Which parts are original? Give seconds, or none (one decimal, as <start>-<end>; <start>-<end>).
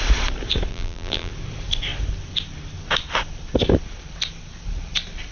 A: 0.0-0.7; 1.3-5.3